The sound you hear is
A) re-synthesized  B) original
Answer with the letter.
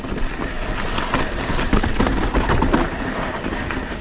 B